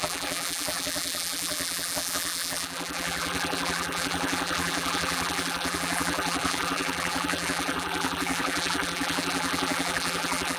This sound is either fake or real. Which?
fake